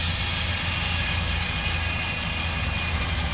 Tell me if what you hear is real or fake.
real